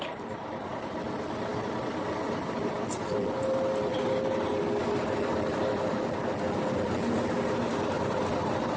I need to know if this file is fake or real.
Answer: real